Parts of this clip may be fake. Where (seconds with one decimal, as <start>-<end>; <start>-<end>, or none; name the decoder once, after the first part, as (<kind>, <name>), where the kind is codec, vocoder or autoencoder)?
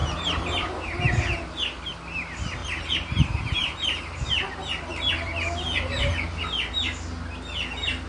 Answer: 2.6-6.4 (vocoder, BigVGAN v2)